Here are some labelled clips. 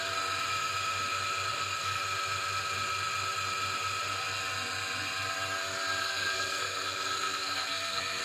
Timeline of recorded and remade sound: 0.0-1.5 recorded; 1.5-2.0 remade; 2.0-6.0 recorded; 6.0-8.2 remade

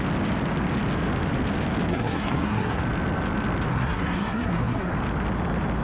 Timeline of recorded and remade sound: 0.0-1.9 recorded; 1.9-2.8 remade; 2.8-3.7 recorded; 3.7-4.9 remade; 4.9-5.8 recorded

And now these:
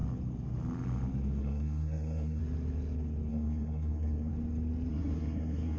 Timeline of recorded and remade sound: 0.0-1.4 recorded; 1.4-2.4 remade; 2.4-3.3 recorded; 3.3-4.3 remade; 4.3-4.9 recorded; 4.9-5.8 remade